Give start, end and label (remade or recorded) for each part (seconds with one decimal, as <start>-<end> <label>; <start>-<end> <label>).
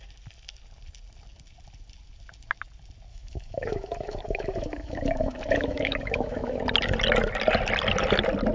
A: 0.0-3.1 recorded; 3.1-6.6 remade; 6.6-8.5 recorded